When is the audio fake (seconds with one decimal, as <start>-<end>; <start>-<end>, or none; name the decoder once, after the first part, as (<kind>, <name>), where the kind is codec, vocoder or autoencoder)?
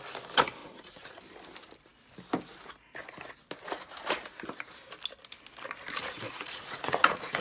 0.6-1.2 (vocoder, Vocos); 6.0-7.4